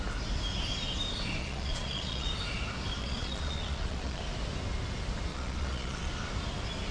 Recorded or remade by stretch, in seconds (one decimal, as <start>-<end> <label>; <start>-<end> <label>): 0.0-1.4 recorded; 1.4-2.3 remade; 2.3-3.0 recorded; 3.0-4.2 remade; 4.2-5.3 recorded; 5.3-6.1 remade; 6.1-6.9 recorded

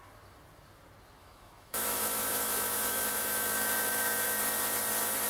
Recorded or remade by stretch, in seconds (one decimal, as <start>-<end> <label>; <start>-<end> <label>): 0.0-1.2 recorded; 1.2-4.4 remade; 4.4-5.3 recorded

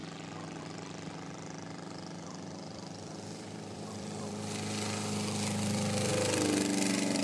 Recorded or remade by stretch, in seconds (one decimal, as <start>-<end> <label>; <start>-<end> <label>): 0.0-0.6 recorded; 0.6-6.1 remade; 6.1-7.2 recorded

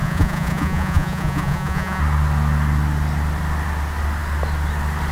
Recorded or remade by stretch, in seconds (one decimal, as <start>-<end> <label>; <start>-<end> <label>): 0.0-2.0 remade; 2.0-5.1 recorded

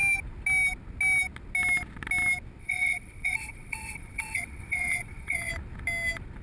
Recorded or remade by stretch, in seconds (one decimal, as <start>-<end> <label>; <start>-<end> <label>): 0.0-2.6 recorded; 2.6-5.5 remade; 5.5-6.4 recorded

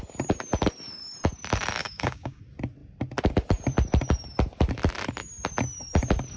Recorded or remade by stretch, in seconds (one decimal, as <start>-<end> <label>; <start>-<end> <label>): 0.0-1.8 recorded; 1.8-2.4 remade; 2.4-6.4 recorded

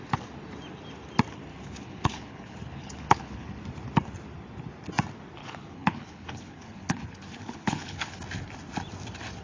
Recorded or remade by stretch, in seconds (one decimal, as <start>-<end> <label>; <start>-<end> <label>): 0.0-1.5 recorded; 1.5-3.6 remade; 3.6-5.4 recorded; 5.4-8.2 remade; 8.2-9.4 recorded